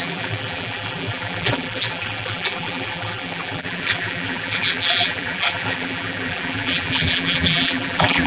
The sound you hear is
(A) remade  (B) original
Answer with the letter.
A